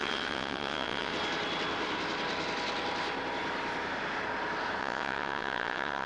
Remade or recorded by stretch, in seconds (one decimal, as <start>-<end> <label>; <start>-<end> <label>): 0.0-1.1 remade; 1.1-4.8 recorded; 4.8-6.1 remade